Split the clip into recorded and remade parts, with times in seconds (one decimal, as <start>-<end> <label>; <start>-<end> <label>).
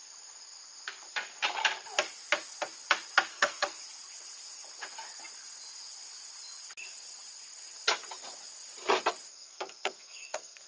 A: 0.0-3.3 recorded; 3.3-3.8 remade; 3.8-9.3 recorded; 9.3-10.7 remade